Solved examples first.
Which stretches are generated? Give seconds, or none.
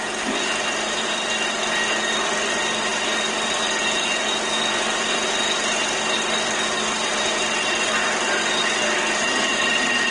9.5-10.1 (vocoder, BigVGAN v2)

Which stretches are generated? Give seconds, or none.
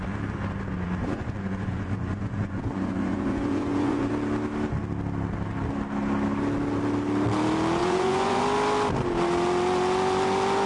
1.0-4.1 (vocoder, Vocos); 7.8-8.4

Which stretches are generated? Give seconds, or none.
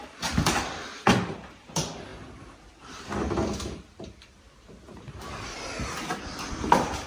0.0-7.1 (vocoder, BigVGAN v2)